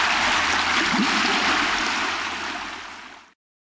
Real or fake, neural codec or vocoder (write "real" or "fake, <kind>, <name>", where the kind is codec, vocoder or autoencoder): real